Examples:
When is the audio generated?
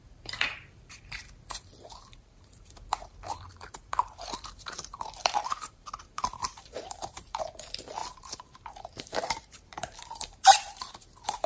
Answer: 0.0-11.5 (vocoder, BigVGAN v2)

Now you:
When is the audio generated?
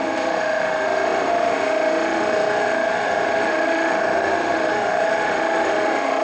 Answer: 0.0-6.2 (autoencoder, DAC-VAE)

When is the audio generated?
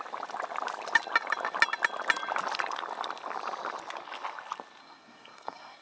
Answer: 4.8-5.8 (codec, SNAC)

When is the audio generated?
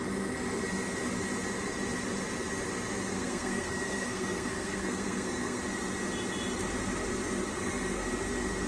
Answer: 3.1-5.6 (codec, SNAC); 7.5-8.1